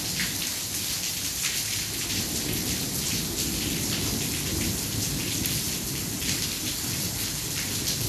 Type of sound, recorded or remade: recorded